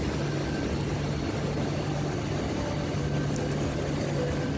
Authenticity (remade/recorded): recorded